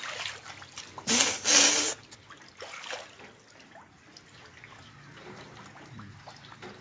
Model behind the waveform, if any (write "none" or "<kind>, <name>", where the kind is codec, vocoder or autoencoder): none